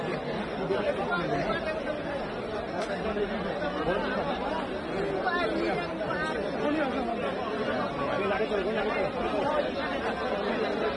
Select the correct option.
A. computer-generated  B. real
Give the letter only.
B